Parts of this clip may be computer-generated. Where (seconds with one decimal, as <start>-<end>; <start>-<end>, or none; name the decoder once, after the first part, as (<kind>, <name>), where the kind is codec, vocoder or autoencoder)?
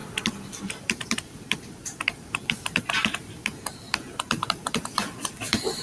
0.6-5.8 (vocoder, BigVGAN v2)